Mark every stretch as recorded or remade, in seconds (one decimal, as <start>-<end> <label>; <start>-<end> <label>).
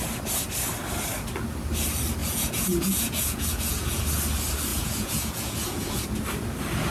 0.0-2.2 recorded; 2.2-4.0 remade; 4.0-4.7 recorded; 4.7-6.2 remade; 6.2-6.9 recorded